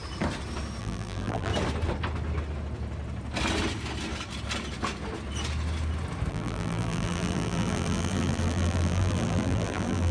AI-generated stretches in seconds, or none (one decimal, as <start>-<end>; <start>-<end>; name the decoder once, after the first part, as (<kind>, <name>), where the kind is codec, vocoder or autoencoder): 0.8-1.5 (vocoder, BigVGAN v2); 6.3-10.1